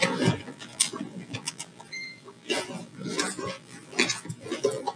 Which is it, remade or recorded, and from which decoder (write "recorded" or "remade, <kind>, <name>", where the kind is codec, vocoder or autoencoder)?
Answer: remade, vocoder, BigVGAN v2